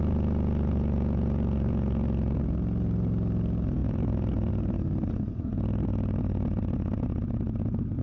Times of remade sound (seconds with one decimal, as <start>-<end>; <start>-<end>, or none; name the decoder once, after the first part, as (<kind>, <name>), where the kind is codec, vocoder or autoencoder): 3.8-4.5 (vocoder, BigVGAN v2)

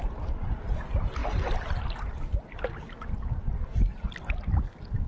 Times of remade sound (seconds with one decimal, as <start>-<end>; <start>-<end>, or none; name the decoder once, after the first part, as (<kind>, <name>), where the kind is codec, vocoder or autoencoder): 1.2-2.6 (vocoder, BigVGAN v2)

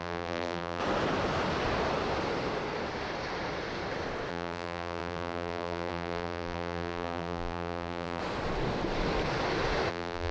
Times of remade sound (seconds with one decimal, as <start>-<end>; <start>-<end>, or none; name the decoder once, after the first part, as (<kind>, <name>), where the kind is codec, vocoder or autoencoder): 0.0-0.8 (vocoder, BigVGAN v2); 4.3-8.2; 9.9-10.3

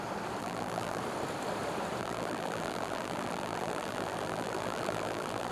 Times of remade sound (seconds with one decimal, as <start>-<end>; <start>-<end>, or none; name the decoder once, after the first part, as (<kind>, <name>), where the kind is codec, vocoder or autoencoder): 0.4-1.0 (vocoder, BigVGAN v2); 2.0-5.5

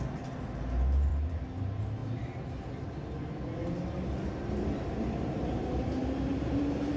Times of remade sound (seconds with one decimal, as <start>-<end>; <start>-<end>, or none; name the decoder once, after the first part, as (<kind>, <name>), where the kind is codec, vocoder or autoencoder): none

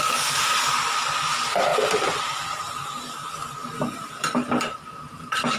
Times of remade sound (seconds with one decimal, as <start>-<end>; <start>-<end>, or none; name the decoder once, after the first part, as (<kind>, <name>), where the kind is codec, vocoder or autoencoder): 1.7-4.5 (vocoder, BigVGAN v2)